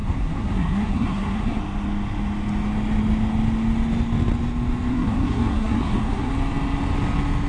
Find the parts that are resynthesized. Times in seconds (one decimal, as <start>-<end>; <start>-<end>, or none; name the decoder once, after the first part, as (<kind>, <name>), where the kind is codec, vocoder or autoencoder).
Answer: 0.0-1.6 (codec, SNAC); 4.9-6.3